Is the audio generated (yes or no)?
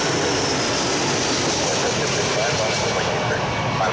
no